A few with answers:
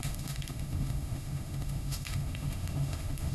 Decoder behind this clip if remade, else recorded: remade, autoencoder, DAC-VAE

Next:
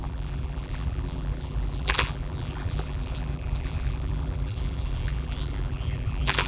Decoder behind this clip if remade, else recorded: remade, vocoder, BigVGAN v2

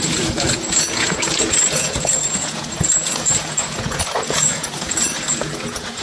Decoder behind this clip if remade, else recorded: remade, vocoder, Vocos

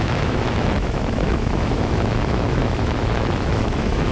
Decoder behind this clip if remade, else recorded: remade, autoencoder, DAC-VAE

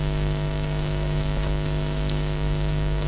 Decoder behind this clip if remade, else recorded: remade, codec, DAC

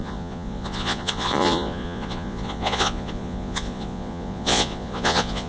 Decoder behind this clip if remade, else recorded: remade, vocoder, Vocos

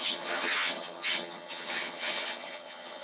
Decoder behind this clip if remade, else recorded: remade, vocoder, HiFi-GAN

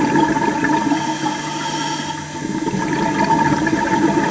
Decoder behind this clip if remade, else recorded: recorded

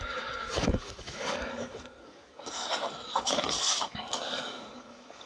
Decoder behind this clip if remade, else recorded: remade, codec, DAC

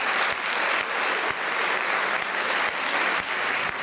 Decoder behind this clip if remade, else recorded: recorded